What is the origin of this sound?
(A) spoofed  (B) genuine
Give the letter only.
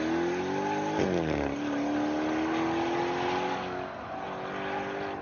B